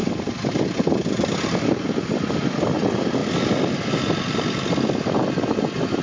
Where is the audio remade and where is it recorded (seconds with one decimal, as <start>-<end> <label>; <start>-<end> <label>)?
0.0-6.0 recorded